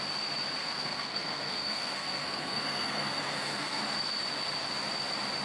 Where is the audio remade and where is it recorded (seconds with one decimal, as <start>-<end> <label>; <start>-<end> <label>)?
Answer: 0.0-0.6 recorded; 0.6-3.8 remade; 3.8-5.4 recorded